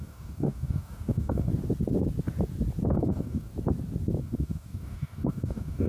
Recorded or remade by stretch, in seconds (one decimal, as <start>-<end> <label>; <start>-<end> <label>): 0.0-1.5 remade; 1.5-2.9 recorded; 2.9-3.5 remade; 3.5-4.2 recorded; 4.2-5.9 remade